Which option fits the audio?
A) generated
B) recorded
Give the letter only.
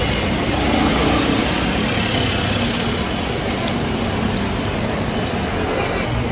B